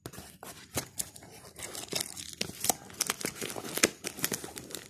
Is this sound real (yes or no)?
yes